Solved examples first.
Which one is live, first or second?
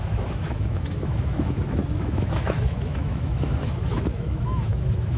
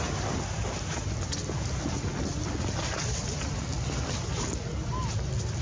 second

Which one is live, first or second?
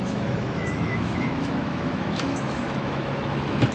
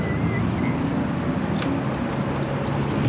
second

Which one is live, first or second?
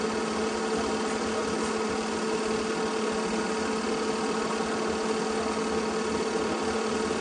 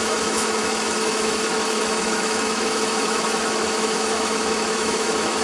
first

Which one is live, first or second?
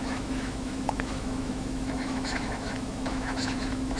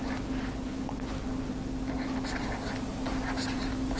second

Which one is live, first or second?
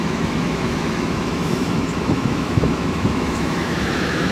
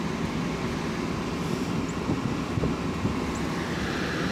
second